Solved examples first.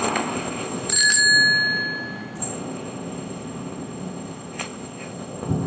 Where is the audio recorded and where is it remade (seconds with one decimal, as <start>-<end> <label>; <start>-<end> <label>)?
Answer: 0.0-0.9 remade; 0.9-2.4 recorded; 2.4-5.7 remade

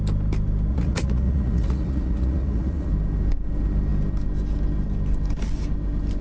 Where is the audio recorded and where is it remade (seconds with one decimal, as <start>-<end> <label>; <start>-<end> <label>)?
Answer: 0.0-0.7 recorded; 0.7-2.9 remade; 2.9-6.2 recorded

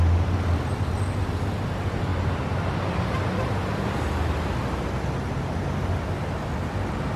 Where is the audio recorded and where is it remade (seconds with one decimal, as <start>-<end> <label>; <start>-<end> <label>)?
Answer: 0.0-7.2 recorded